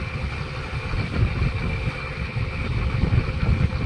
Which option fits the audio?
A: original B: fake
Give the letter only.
A